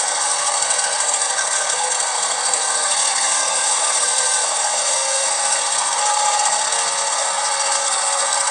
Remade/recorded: remade